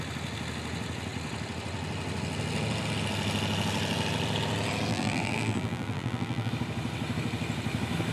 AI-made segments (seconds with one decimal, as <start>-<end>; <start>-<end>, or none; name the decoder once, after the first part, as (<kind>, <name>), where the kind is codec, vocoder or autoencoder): 4.9-6.5 (vocoder, BigVGAN v2)